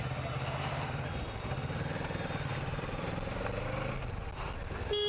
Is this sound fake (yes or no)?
no